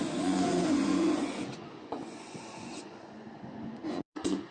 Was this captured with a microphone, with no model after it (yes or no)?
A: no